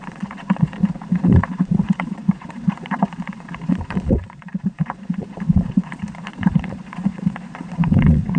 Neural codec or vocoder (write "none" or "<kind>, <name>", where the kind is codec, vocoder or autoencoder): vocoder, Vocos